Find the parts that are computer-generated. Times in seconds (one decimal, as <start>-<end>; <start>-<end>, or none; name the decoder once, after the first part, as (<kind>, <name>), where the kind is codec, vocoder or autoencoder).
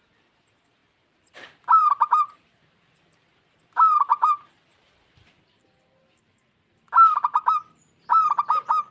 0.8-3.2 (vocoder, BigVGAN v2); 4.1-5.7